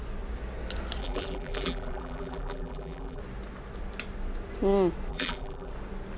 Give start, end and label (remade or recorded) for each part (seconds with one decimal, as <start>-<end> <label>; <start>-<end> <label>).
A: 0.0-1.0 recorded; 1.0-3.2 remade; 3.2-5.1 recorded; 5.1-5.7 remade; 5.7-6.2 recorded